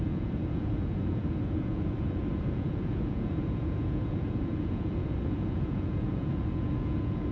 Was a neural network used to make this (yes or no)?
yes